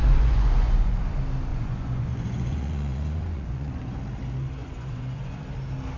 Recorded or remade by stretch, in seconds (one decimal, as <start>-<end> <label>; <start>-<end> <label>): 0.0-1.0 remade; 1.0-1.5 recorded; 1.5-4.0 remade; 4.0-4.6 recorded; 4.6-5.4 remade; 5.4-6.0 recorded